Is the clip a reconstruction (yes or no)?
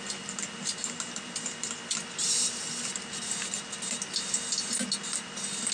no